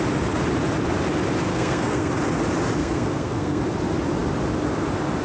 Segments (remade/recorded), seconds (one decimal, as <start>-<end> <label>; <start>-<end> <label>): 0.0-1.5 recorded; 1.5-2.1 remade; 2.1-2.8 recorded; 2.8-3.6 remade; 3.6-5.2 recorded